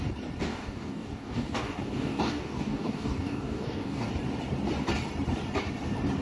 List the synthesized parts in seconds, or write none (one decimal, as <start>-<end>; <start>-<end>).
0.4-4.1